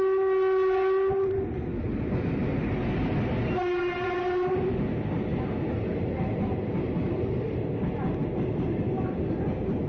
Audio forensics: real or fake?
real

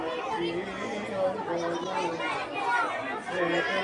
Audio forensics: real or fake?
real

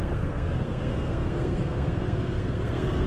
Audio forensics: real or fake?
fake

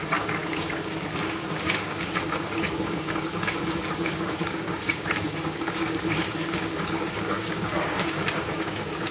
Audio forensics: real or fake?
fake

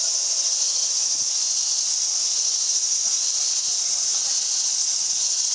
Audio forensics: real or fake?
real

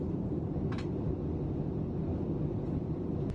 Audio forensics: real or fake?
real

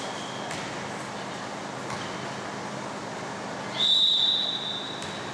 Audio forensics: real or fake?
real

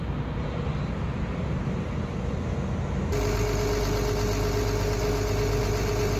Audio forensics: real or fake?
real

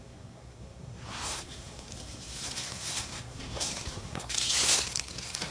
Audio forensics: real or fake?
fake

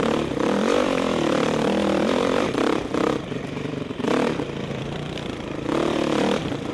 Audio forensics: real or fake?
fake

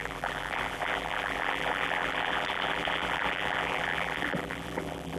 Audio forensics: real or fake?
fake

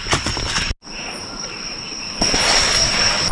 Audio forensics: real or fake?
real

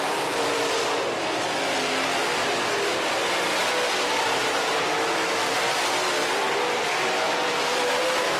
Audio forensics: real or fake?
real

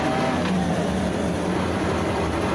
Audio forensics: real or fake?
real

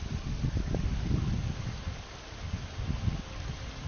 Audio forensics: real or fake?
real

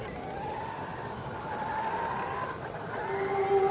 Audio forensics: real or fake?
real